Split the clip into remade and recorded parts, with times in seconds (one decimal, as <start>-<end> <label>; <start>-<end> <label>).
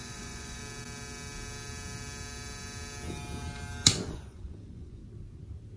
0.0-0.6 remade; 0.6-4.1 recorded; 4.1-5.0 remade; 5.0-5.8 recorded